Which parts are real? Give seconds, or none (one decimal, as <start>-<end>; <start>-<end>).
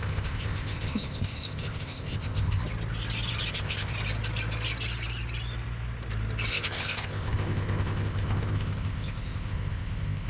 2.6-3.5; 3.9-6.5